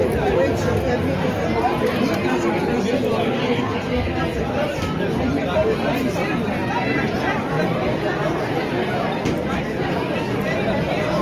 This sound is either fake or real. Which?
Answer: real